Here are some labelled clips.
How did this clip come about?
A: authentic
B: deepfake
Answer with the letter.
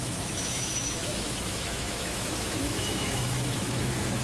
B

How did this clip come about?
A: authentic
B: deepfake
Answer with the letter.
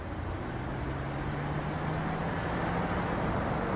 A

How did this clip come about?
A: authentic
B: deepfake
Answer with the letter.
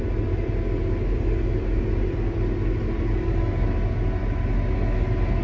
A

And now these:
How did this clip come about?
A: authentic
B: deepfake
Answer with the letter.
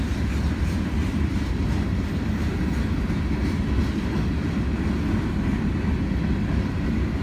A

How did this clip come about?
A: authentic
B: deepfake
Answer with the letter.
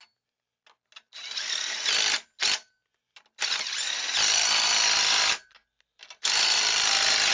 A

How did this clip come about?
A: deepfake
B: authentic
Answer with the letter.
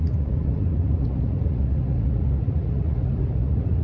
A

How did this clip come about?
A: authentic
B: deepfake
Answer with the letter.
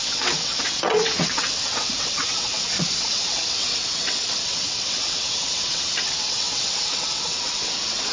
B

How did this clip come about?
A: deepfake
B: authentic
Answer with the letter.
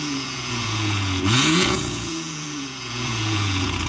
A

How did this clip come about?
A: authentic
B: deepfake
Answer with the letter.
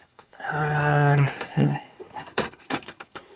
B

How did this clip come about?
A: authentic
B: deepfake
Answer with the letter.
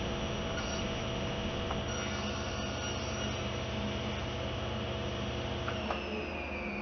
A